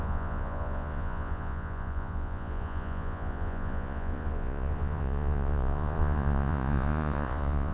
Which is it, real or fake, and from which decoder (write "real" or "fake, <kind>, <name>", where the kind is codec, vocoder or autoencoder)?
fake, vocoder, Vocos